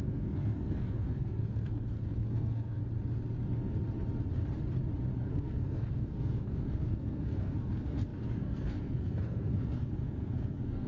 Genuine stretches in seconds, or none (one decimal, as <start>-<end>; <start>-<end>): 2.8-5.2